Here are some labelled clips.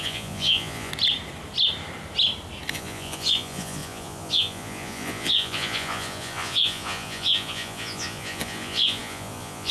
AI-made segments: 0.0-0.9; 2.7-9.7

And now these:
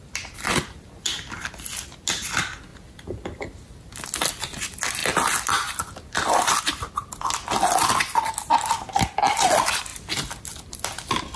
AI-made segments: none

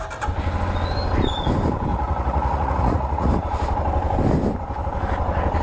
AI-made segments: 1.9-3.3

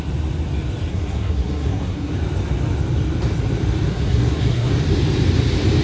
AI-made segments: 0.9-2.1; 3.9-4.7

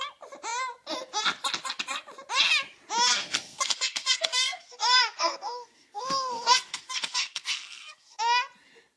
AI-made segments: 3.1-8.2

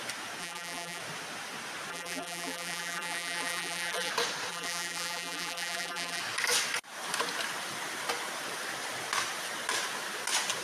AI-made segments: 0.4-1.0; 1.9-4.1; 4.5-6.2